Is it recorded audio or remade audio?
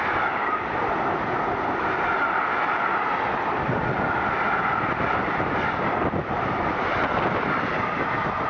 recorded